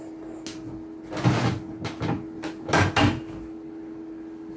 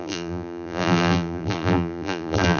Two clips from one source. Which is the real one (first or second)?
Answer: first